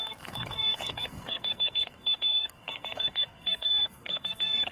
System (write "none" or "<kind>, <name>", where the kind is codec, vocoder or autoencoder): codec, SNAC